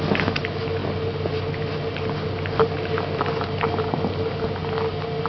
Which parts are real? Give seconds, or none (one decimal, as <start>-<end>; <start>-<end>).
0.0-5.3